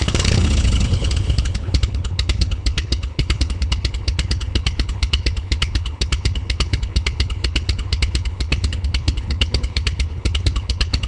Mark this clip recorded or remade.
remade